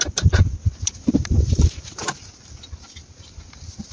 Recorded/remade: recorded